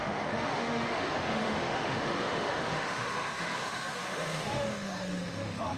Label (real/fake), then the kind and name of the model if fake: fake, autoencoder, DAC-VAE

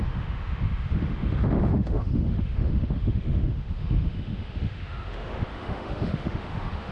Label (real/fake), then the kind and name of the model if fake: fake, autoencoder, DAC-VAE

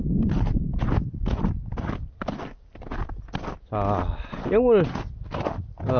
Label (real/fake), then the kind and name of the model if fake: real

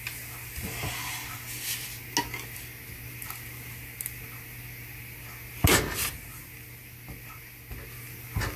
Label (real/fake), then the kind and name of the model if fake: real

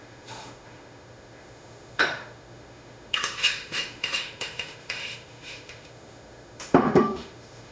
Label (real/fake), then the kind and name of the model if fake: fake, autoencoder, DAC-VAE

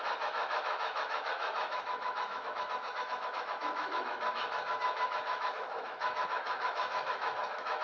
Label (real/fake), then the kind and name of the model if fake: fake, autoencoder, DAC-VAE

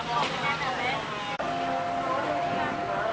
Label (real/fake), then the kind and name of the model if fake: real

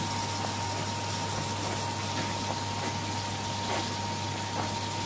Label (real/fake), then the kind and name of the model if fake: real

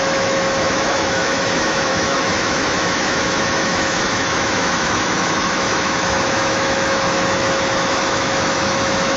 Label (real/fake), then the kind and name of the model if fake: fake, autoencoder, DAC-VAE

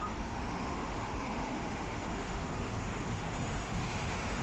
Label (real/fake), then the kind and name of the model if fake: fake, autoencoder, DAC-VAE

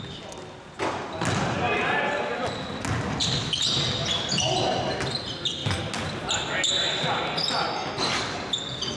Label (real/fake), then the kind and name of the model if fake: real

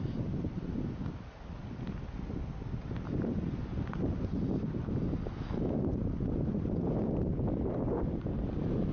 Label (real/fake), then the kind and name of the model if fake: real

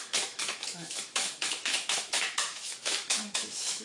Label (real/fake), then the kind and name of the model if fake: fake, autoencoder, DAC-VAE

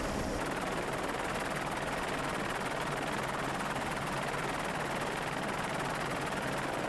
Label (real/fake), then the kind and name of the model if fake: real